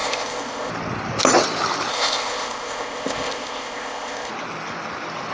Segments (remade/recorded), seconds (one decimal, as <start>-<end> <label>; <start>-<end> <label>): 0.0-0.7 remade; 0.7-1.9 recorded; 1.9-4.3 remade; 4.3-5.3 recorded